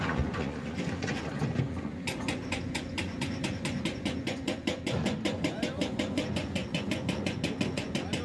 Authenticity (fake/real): fake